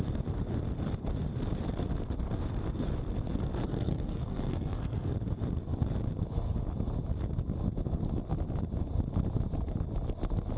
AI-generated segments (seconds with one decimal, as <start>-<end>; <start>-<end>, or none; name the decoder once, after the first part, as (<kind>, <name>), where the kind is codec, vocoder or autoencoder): 3.6-5.1 (codec, SNAC)